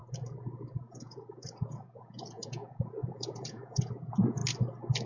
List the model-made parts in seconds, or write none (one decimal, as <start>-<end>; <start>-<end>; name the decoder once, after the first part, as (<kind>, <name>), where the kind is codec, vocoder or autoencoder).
0.7-4.4 (vocoder, Vocos)